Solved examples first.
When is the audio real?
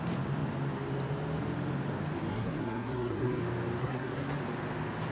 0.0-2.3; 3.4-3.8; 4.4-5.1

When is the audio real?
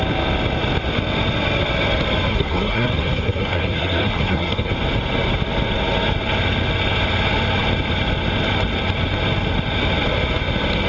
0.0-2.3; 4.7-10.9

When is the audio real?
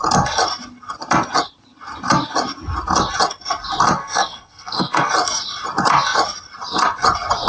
0.0-4.0; 5.1-7.5